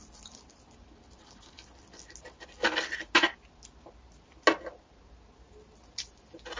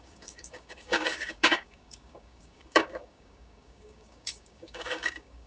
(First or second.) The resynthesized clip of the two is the second